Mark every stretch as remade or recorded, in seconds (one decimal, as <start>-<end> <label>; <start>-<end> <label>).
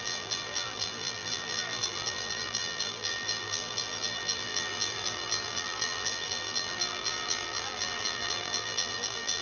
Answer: 0.0-9.4 remade